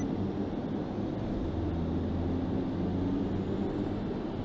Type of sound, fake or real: real